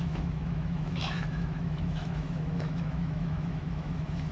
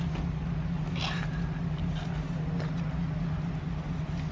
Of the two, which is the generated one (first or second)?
first